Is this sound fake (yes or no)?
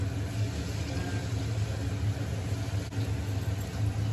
no